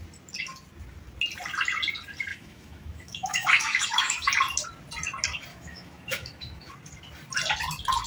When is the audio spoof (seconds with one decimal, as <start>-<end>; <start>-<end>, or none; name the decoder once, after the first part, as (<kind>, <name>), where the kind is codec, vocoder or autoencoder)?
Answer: 2.3-4.3 (autoencoder, DAC-VAE); 5.5-6.7